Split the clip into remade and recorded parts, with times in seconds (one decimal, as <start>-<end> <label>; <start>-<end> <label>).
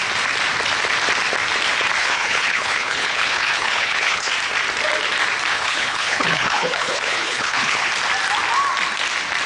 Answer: 0.0-2.0 recorded; 2.0-4.3 remade; 4.3-5.5 recorded; 5.5-7.9 remade; 7.9-9.5 recorded